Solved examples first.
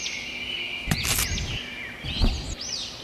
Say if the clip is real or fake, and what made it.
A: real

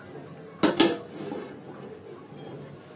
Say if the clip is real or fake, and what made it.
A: real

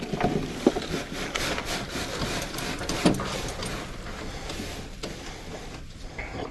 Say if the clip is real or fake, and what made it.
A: real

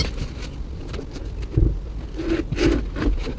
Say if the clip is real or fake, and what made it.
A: real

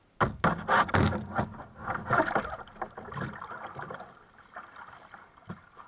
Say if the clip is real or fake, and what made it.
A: real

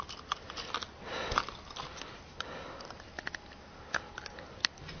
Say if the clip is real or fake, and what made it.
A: real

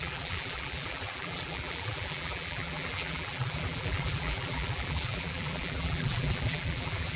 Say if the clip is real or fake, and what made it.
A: fake, vocoder, BigVGAN v2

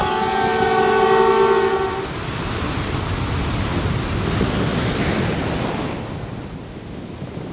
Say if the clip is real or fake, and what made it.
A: real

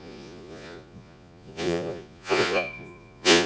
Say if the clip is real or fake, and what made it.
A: fake, vocoder, Vocos